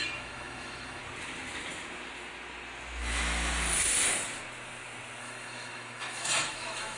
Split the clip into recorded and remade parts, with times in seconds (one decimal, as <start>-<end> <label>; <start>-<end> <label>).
0.0-1.0 remade; 1.0-5.2 recorded; 5.2-7.0 remade